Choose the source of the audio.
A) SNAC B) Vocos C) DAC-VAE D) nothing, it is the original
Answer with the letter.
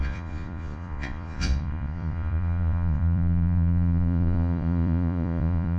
B